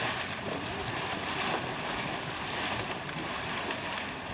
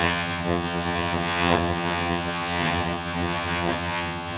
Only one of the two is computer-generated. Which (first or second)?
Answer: second